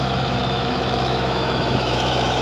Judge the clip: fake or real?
fake